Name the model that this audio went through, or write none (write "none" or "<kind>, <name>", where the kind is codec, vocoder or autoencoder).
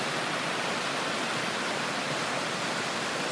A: none